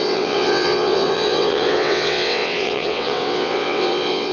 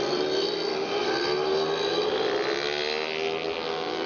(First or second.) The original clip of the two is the second